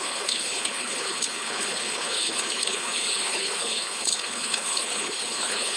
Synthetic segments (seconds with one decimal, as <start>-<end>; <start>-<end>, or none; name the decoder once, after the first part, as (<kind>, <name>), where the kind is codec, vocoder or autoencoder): 0.0-5.8 (codec, HILCodec)